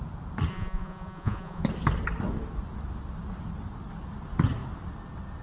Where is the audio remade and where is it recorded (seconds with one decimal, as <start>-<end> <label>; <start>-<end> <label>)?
0.0-0.5 recorded; 0.5-1.6 remade; 1.6-5.4 recorded